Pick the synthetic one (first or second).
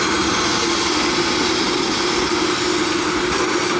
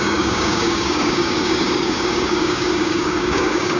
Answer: second